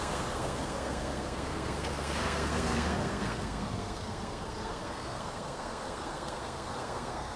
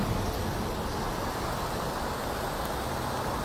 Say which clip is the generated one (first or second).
first